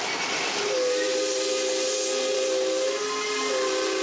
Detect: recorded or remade recorded